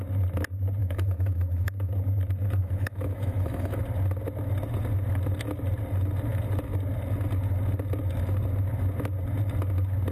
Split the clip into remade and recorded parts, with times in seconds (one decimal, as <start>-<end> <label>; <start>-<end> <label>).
0.0-0.8 recorded; 0.8-1.9 remade; 1.9-2.6 recorded; 2.6-3.8 remade; 3.8-10.1 recorded